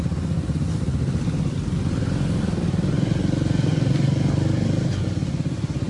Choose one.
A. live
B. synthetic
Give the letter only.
A